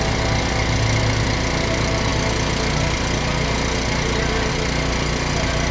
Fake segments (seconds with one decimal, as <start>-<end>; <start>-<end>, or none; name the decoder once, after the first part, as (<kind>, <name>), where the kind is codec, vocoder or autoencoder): none